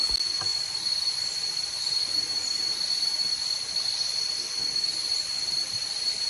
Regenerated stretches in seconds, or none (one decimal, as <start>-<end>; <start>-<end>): 0.5-4.3; 4.9-6.3